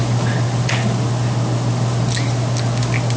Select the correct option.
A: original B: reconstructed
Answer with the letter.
A